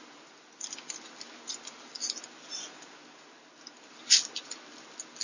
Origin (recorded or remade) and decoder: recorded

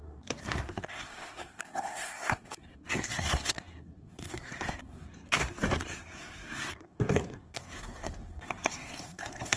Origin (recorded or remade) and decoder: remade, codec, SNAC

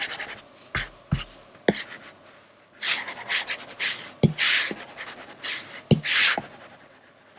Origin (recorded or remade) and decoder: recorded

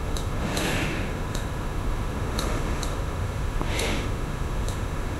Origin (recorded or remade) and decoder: remade, autoencoder, DAC-VAE